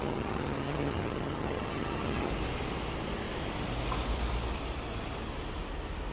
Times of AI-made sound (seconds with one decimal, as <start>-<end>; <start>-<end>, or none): 0.0-2.3